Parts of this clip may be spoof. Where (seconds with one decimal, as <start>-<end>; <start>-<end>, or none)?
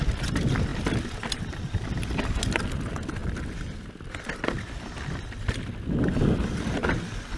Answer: none